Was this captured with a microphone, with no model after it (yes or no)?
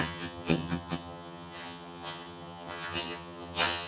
no